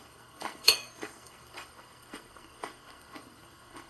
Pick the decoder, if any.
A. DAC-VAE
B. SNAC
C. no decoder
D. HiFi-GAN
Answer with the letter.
B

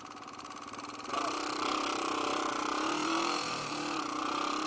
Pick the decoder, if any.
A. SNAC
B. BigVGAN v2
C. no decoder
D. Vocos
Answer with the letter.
B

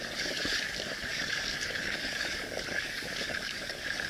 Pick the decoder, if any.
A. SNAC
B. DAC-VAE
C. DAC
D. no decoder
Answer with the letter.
C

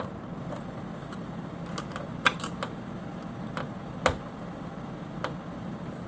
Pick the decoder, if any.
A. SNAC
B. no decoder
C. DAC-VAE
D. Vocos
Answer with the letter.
B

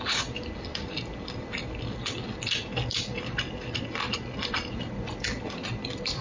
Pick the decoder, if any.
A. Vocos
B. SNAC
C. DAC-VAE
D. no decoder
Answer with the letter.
D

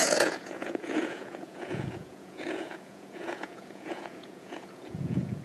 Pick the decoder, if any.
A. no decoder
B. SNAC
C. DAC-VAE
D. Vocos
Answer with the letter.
D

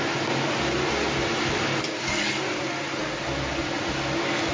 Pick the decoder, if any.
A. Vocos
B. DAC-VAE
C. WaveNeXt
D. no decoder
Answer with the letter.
D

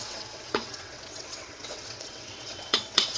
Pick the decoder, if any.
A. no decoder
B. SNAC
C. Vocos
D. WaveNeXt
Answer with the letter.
D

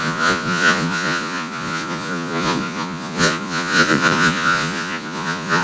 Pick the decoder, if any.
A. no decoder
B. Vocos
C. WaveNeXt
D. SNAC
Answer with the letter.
B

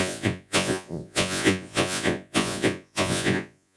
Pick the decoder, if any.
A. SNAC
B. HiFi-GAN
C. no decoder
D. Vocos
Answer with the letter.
D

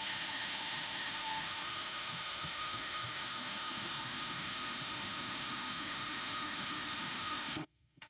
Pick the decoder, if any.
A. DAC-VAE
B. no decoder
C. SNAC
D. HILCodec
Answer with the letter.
A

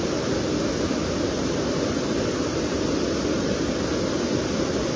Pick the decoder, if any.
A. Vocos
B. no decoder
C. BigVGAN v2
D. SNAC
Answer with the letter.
B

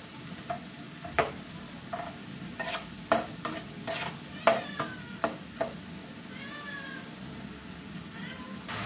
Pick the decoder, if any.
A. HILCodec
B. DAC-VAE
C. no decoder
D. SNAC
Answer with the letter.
C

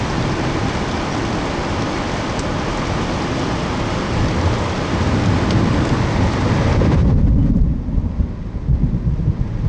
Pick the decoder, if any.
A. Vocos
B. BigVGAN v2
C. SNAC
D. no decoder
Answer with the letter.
D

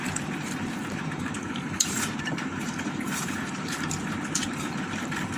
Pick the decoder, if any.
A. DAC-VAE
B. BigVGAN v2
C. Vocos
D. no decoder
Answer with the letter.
B